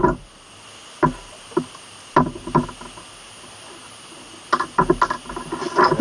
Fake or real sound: real